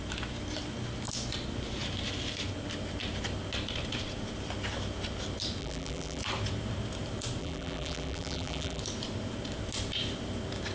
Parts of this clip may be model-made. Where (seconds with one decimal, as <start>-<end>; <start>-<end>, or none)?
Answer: 5.6-6.2; 7.4-8.8